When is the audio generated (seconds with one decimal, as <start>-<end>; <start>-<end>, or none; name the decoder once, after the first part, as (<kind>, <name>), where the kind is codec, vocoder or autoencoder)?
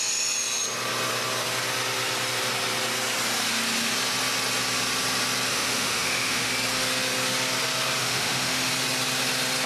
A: 5.5-6.5 (autoencoder, DAC-VAE); 8.0-8.7